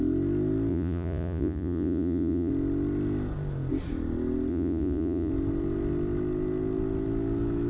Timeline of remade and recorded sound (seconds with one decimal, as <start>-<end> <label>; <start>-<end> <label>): 0.0-0.7 recorded; 0.7-2.5 remade; 2.5-4.5 recorded; 4.5-5.3 remade; 5.3-7.7 recorded